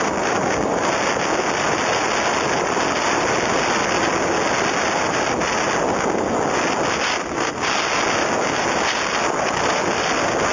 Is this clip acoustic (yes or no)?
yes